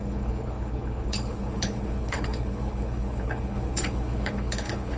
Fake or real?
fake